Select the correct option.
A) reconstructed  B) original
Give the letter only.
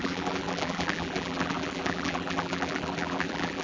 A